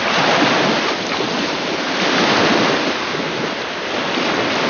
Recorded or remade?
recorded